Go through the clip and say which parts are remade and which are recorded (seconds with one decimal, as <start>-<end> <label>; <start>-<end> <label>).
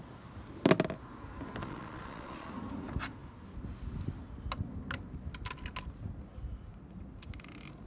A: 0.0-1.6 recorded; 1.6-2.5 remade; 2.5-7.9 recorded